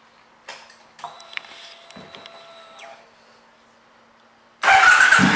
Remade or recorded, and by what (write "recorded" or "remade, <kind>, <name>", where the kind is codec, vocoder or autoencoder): remade, vocoder, BigVGAN v2